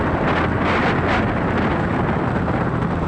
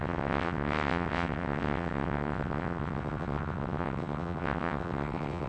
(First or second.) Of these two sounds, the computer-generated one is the second